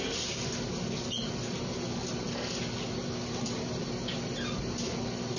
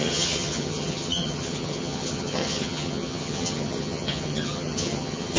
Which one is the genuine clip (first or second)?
first